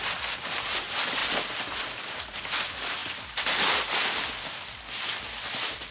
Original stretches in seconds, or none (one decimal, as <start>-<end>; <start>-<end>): 0.0-5.9